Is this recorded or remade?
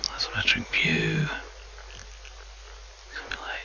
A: recorded